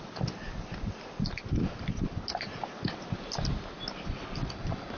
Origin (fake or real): real